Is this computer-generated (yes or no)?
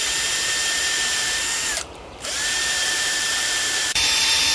yes